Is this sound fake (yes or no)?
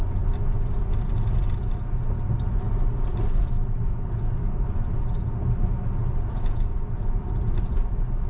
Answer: no